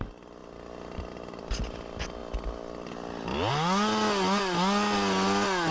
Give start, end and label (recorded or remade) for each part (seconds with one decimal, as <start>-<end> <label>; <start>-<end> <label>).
0.0-5.7 recorded